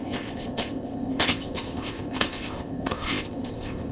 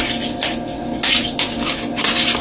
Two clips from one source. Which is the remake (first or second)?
first